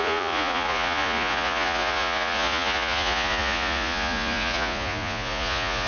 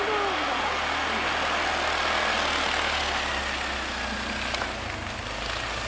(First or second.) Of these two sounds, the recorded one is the second